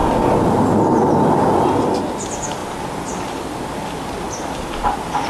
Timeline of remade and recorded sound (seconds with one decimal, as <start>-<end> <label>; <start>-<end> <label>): 0.0-5.3 recorded